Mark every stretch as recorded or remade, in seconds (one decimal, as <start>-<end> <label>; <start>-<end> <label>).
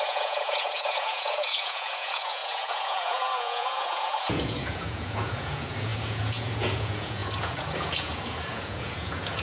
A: 0.0-9.4 remade